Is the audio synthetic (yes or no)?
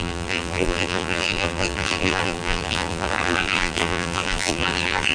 yes